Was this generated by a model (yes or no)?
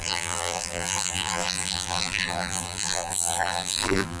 yes